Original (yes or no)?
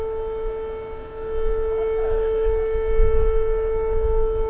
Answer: yes